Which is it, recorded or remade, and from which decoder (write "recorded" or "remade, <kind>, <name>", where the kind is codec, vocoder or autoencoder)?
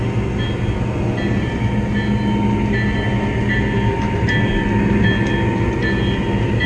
recorded